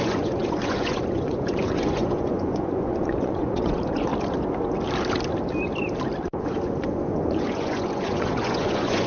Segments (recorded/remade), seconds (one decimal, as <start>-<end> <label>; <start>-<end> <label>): 0.0-4.1 remade; 4.1-6.4 recorded; 6.4-9.1 remade